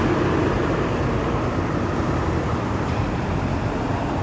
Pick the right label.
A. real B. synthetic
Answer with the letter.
B